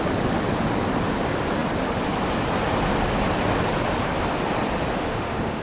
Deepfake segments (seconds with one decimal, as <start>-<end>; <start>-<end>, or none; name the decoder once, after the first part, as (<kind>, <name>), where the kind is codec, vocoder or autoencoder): 4.9-5.6 (autoencoder, DAC-VAE)